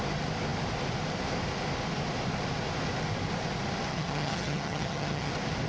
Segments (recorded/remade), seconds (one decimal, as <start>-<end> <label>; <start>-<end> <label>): 0.0-3.9 recorded; 3.9-5.3 remade; 5.3-5.7 recorded